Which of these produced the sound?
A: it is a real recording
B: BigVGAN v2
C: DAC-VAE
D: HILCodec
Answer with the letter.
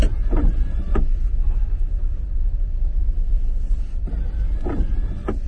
A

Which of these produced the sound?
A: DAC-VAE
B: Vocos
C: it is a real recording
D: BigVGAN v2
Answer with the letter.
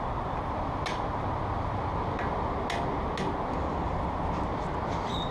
C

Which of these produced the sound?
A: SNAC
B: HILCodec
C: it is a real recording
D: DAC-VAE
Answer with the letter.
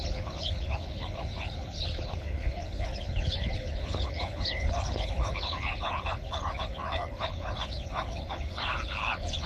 B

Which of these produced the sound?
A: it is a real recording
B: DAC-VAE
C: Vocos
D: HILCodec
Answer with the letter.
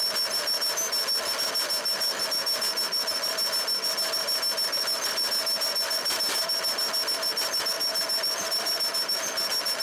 A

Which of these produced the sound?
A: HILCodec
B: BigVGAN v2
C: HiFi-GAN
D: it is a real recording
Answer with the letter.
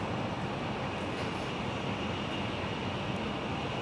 D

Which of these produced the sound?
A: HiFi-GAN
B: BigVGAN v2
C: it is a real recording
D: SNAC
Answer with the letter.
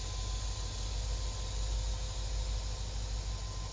C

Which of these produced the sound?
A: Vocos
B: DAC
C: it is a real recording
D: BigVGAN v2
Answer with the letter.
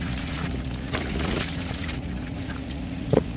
A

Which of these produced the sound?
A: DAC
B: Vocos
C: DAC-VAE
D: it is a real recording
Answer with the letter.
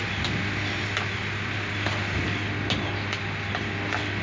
D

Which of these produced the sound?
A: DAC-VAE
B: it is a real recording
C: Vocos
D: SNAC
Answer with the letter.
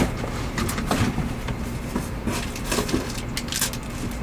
B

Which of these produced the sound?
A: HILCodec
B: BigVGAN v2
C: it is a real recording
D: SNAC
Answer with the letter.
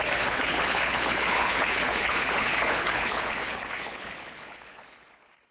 A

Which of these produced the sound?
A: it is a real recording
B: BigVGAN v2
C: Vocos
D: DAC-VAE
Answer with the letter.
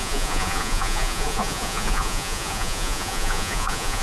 C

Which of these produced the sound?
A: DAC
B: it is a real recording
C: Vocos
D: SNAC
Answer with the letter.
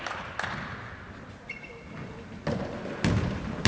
B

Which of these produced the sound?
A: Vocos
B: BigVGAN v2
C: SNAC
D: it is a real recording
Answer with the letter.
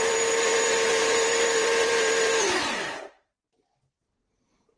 B